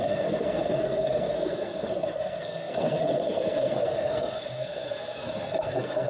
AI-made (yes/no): yes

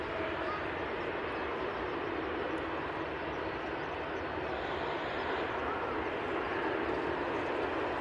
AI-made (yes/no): no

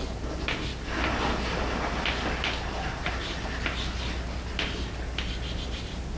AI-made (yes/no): no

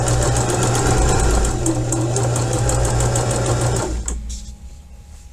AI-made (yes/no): no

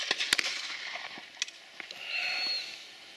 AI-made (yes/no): no